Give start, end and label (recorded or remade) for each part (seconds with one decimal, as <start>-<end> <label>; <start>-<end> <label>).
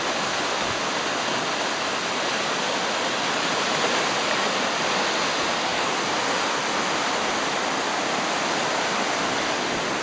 0.0-10.0 recorded